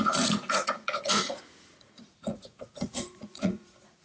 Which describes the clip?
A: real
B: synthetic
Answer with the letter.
B